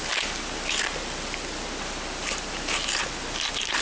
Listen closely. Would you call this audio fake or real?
real